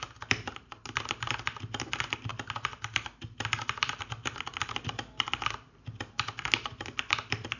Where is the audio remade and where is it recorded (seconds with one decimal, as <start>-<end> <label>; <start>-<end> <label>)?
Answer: 0.0-7.6 recorded